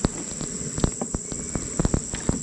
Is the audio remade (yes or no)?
no